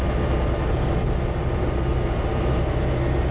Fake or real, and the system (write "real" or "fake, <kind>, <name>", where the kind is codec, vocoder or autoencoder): real